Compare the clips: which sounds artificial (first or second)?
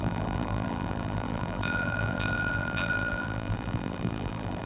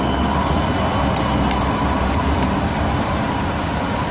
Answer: first